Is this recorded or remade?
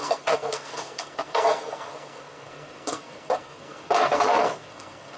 remade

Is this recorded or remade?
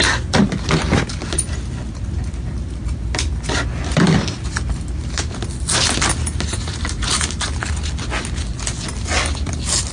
recorded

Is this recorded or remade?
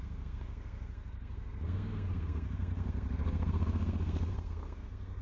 remade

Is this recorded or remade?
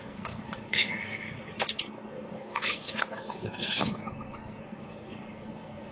remade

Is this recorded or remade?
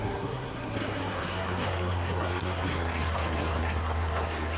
remade